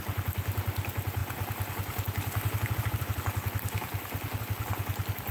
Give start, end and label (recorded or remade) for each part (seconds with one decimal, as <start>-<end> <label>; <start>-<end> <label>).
0.0-5.3 recorded

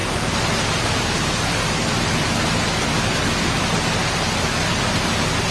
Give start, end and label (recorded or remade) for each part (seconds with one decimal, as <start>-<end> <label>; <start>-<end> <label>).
0.0-5.5 recorded

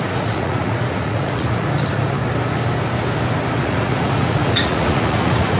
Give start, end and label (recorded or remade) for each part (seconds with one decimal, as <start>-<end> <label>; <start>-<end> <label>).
0.0-2.2 remade; 2.2-3.6 recorded; 3.6-5.6 remade

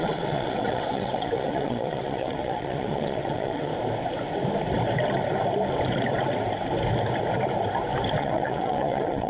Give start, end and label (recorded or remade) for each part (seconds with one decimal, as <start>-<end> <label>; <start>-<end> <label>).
0.0-3.7 remade; 3.7-8.2 recorded; 8.2-9.3 remade

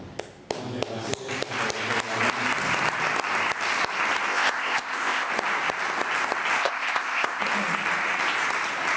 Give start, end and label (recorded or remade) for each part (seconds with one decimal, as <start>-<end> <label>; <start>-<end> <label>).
0.0-4.3 recorded; 4.3-5.3 remade; 5.3-6.6 recorded; 6.6-7.4 remade; 7.4-9.0 recorded